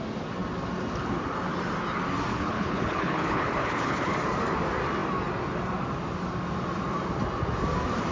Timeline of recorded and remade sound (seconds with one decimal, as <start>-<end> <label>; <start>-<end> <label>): 0.0-2.3 recorded; 2.3-4.1 remade; 4.1-8.1 recorded